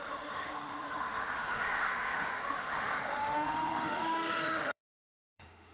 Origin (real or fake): fake